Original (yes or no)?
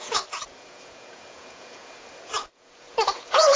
no